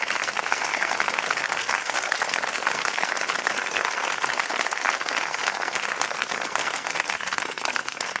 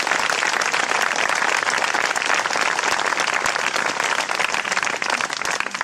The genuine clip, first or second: second